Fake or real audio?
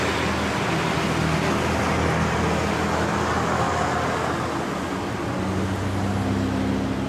real